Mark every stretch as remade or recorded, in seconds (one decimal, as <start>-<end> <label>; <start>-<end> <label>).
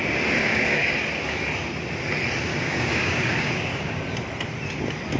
0.0-0.4 recorded; 0.4-1.0 remade; 1.0-2.5 recorded; 2.5-4.0 remade; 4.0-5.2 recorded